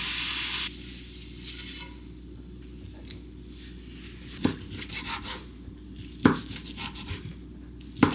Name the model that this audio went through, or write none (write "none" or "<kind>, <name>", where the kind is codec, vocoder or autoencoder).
none